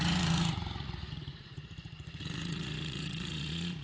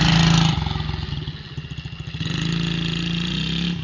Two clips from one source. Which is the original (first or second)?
second